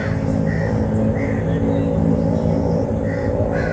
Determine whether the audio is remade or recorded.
recorded